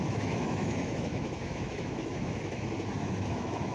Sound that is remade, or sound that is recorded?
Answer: remade